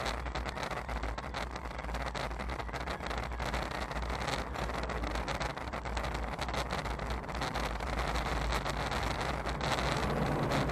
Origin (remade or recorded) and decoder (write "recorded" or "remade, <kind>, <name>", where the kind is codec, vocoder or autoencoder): recorded